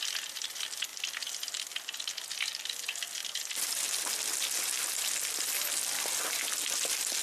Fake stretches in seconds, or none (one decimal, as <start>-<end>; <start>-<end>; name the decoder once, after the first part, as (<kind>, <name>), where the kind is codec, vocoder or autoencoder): 0.9-1.6 (vocoder, BigVGAN v2); 3.2-4.1